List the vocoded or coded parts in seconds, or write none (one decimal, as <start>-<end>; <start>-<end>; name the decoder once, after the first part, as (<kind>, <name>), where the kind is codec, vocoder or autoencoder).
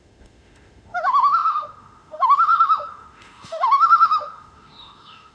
0.0-5.3 (autoencoder, DAC-VAE)